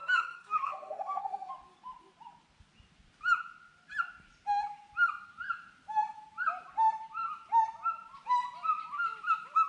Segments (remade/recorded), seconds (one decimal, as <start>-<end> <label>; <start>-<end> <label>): 0.0-1.5 remade; 1.5-9.7 recorded